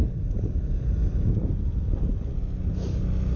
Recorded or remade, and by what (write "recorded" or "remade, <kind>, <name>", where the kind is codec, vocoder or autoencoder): recorded